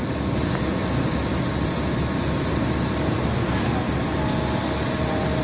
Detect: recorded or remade recorded